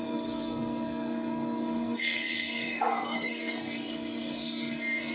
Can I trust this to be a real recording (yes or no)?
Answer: no